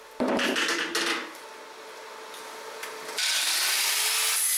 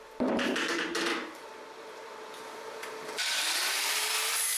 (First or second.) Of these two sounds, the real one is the first